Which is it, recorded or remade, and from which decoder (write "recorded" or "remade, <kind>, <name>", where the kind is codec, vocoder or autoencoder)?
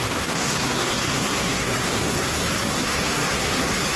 remade, codec, SNAC